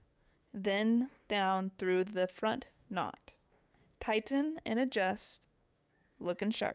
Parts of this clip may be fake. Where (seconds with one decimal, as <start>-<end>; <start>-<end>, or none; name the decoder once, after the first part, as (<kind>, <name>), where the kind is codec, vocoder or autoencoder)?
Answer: 0.0-6.7 (codec, DAC)

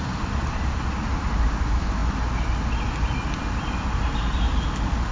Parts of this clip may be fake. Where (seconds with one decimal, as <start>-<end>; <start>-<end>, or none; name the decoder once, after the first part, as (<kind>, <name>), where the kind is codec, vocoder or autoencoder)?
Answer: none

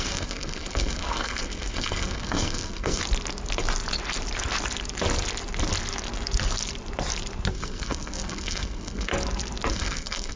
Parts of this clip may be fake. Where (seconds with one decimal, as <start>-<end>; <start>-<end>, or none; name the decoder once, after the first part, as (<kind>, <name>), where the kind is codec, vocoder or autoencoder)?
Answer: 0.0-3.0 (codec, SNAC); 7.5-9.1; 9.7-10.4

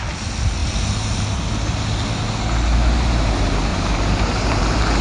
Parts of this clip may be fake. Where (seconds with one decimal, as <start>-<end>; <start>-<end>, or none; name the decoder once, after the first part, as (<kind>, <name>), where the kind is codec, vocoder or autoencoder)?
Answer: 3.7-4.6 (vocoder, BigVGAN v2)

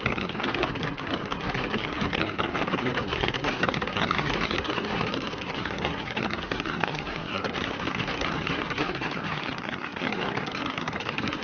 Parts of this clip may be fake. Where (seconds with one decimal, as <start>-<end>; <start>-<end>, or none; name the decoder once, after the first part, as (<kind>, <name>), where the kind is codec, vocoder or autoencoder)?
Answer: 0.0-11.4 (codec, SNAC)

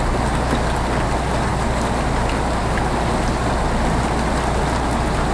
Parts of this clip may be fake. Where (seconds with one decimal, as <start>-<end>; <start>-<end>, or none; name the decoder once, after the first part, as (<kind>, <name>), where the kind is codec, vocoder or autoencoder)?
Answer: none

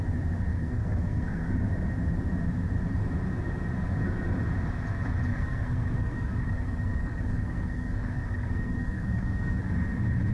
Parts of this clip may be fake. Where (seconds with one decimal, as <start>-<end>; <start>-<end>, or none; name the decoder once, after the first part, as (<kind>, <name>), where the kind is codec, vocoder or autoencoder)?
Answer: 0.5-1.5 (codec, SNAC); 5.3-9.6